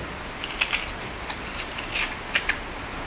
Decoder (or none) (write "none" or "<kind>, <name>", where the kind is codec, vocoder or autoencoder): none